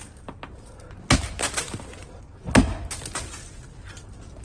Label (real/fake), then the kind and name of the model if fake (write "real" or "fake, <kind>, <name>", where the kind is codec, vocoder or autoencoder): real